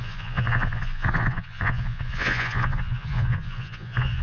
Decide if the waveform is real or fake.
fake